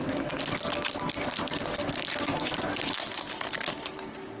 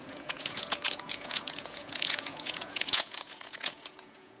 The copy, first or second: second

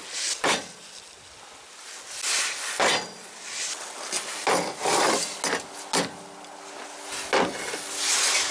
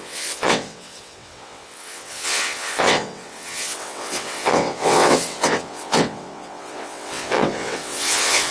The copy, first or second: second